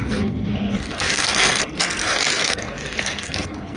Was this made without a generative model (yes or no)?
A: no